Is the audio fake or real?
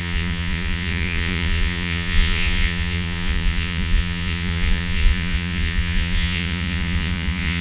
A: fake